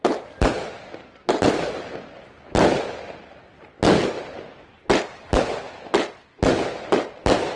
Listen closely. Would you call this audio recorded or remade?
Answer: recorded